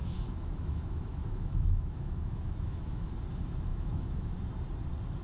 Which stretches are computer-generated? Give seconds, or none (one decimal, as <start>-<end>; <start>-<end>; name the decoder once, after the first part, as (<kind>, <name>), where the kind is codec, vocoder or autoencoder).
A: 0.0-3.1 (autoencoder, DAC-VAE); 3.7-4.3